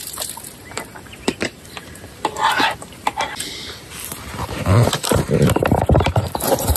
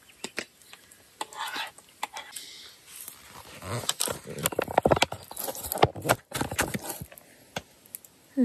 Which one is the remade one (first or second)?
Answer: first